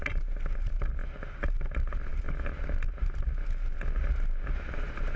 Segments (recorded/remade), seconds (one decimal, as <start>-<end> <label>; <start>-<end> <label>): 0.0-5.2 recorded